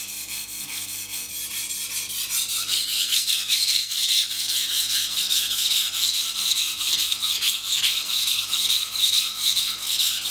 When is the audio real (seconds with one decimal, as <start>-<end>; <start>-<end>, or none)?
1.3-2.6